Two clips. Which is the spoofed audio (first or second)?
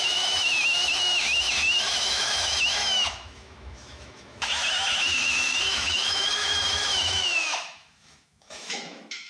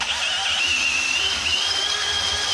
first